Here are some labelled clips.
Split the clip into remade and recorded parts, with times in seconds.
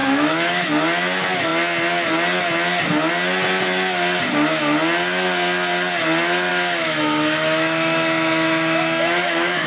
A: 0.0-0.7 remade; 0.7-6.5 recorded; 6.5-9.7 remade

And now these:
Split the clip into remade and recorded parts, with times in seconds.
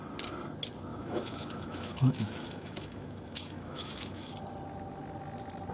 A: 0.0-0.9 recorded; 0.9-4.3 remade; 4.3-5.7 recorded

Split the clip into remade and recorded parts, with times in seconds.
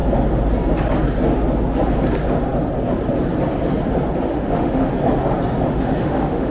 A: 0.0-4.3 recorded; 4.3-4.9 remade; 4.9-5.7 recorded; 5.7-6.5 remade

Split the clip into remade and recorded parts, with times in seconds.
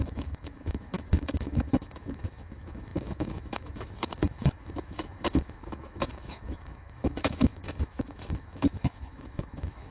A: 0.0-9.9 remade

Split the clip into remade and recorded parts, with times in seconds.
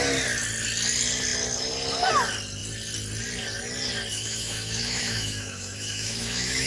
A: 0.0-4.1 recorded; 4.1-6.7 remade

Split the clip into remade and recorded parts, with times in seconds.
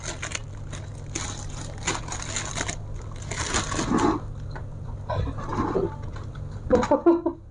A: 0.0-7.5 recorded